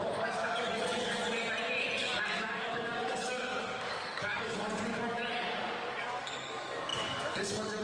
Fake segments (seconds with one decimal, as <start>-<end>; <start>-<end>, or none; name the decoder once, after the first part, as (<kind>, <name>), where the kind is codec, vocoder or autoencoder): 0.0-1.2 (codec, DAC); 2.0-5.2; 6.0-7.8